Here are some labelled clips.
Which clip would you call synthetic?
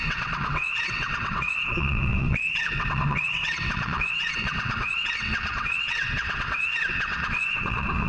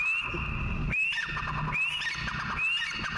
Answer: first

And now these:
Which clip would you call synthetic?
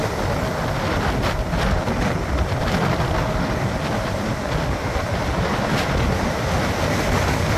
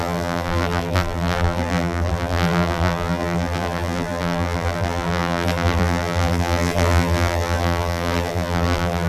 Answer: second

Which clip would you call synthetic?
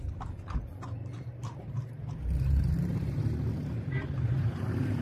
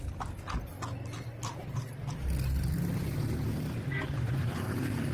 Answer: first